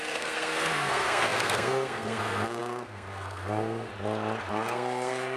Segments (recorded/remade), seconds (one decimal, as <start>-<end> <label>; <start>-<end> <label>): 0.0-3.9 remade; 3.9-4.5 recorded; 4.5-5.4 remade